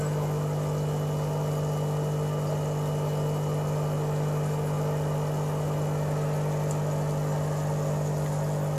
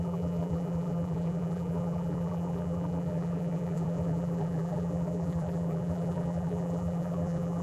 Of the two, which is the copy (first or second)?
second